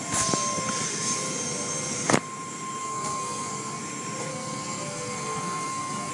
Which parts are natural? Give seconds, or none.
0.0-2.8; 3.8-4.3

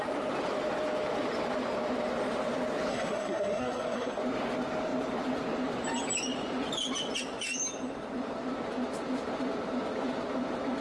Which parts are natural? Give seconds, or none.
0.0-2.9; 4.2-10.8

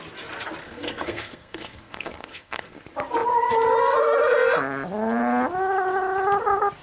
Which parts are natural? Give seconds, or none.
0.0-0.6; 2.8-6.8